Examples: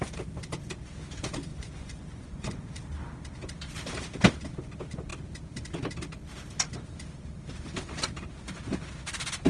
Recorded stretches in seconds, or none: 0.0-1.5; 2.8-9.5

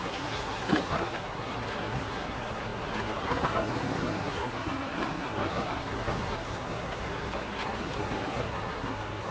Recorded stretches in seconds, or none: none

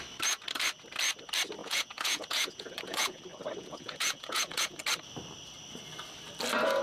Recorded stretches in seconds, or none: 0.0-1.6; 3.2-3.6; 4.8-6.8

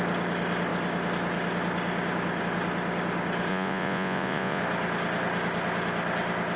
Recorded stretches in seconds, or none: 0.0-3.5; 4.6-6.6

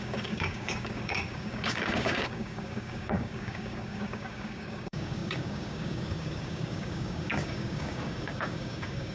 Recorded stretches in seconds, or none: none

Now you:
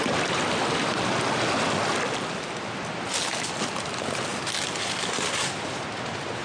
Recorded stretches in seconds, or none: 0.0-6.4

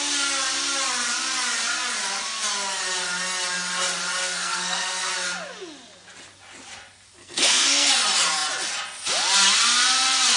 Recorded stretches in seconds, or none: 0.0-4.2; 5.1-7.2; 7.9-10.4

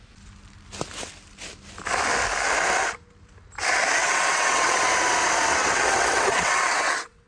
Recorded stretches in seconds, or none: 0.0-4.0; 4.8-5.6